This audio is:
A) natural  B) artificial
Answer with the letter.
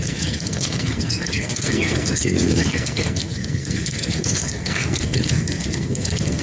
B